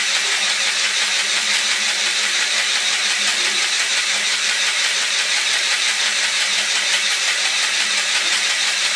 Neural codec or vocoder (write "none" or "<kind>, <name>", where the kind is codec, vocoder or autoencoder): vocoder, BigVGAN v2